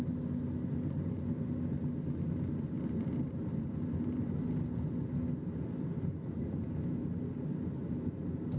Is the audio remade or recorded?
recorded